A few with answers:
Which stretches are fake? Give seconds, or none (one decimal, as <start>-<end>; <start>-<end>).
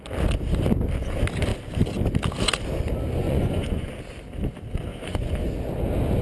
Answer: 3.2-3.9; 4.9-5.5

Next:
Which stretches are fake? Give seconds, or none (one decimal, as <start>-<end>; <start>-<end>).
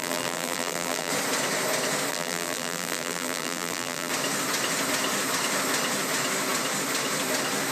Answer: 0.0-1.1; 2.1-4.1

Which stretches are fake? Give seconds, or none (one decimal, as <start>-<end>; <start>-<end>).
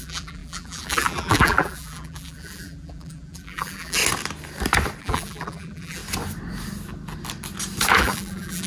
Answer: 0.0-4.0; 5.0-6.0; 8.0-8.7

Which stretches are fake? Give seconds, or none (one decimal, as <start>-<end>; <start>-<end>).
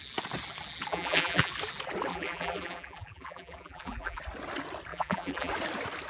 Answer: 0.9-1.5; 2.1-4.2; 4.9-5.5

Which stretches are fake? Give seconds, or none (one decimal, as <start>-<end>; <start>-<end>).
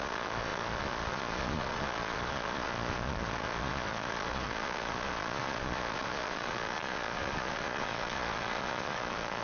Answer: 0.0-9.4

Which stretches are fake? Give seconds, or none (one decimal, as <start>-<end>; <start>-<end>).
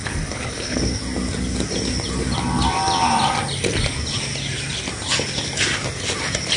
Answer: 0.0-0.8